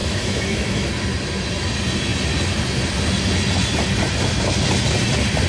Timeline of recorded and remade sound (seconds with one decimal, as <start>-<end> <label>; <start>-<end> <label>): 0.0-0.9 remade; 0.9-5.5 recorded